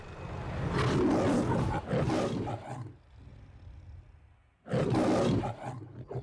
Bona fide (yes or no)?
yes